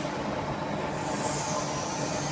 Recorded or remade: recorded